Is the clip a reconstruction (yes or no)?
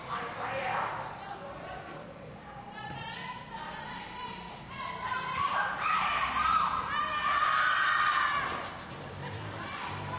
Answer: yes